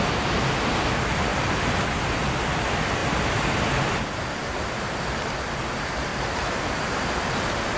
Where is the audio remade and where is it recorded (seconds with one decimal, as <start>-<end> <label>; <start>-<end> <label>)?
0.0-1.3 recorded; 1.3-1.8 remade; 1.8-7.8 recorded